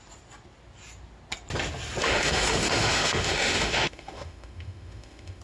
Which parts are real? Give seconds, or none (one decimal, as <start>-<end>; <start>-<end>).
0.0-2.0